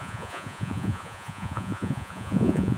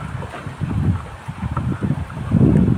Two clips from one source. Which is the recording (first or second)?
second